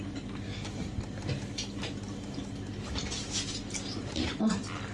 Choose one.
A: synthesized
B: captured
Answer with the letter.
B